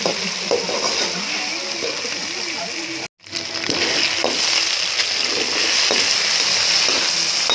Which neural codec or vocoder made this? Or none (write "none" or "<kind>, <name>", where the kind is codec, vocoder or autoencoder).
none